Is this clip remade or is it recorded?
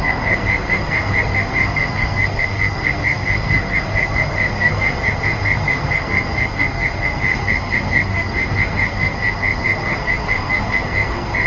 remade